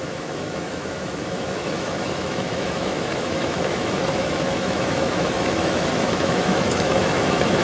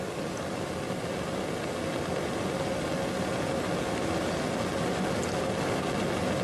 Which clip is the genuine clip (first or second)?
second